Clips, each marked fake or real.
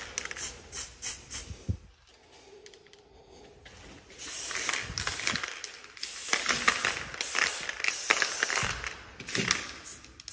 real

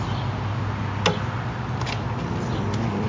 real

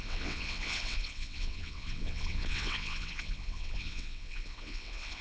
fake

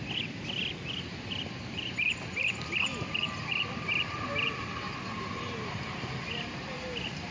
real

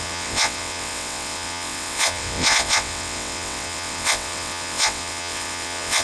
fake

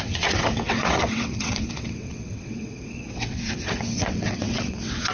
fake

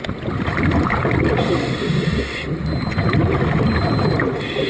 real